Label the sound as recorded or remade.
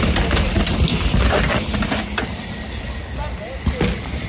recorded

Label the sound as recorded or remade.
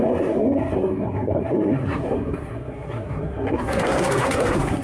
remade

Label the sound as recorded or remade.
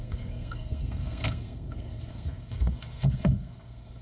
remade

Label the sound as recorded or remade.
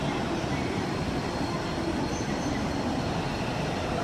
recorded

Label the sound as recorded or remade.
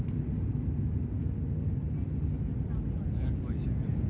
recorded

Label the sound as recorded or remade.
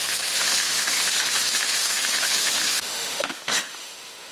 remade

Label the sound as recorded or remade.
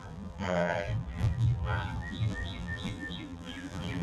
remade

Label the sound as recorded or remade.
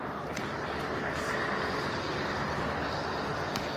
recorded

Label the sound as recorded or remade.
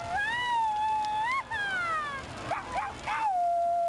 recorded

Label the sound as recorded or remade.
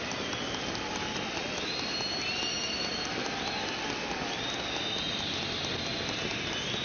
recorded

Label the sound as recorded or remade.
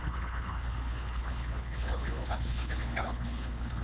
remade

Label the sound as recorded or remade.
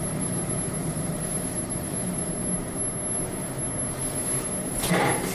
remade